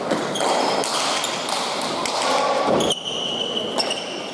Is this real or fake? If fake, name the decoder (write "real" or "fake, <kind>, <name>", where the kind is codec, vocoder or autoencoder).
real